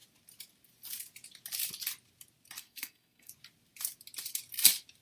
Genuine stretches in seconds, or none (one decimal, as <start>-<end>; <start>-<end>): 0.0-2.6; 3.3-5.0